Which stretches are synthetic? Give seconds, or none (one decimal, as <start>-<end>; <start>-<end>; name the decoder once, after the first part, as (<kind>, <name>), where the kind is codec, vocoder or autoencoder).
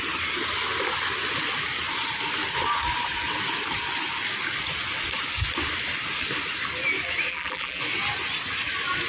7.3-7.8 (vocoder, BigVGAN v2)